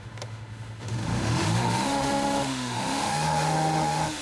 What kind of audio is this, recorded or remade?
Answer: remade